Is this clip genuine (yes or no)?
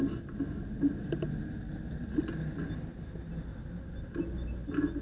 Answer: yes